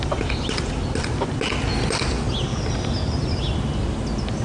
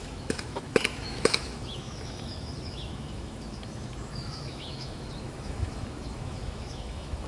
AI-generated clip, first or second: second